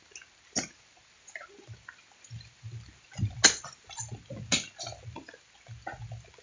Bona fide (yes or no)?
yes